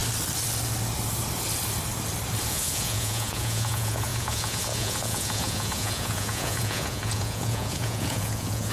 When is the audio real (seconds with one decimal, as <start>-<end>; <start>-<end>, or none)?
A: 0.0-2.5